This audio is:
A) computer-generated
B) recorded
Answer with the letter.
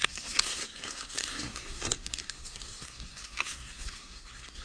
A